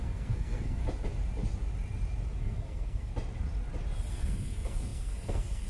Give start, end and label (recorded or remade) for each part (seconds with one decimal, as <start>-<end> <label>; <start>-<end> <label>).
0.0-0.8 remade; 0.8-2.4 recorded; 2.4-3.1 remade; 3.1-4.1 recorded; 4.1-5.7 remade